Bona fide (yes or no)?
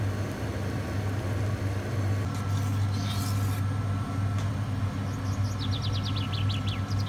yes